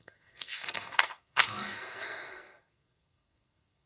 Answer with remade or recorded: remade